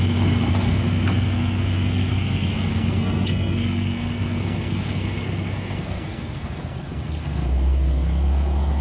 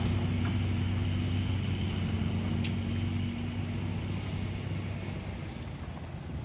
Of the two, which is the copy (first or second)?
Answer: first